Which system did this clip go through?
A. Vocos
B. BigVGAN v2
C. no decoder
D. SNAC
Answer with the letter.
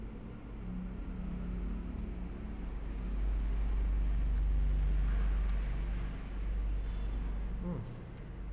C